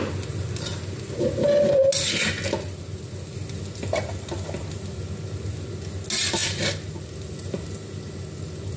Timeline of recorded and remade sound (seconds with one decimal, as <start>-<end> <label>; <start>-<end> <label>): 0.0-8.8 recorded